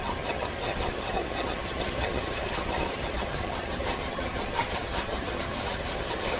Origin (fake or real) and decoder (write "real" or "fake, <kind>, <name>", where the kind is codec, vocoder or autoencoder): fake, vocoder, HiFi-GAN